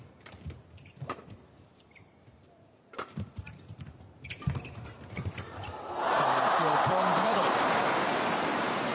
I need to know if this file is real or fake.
fake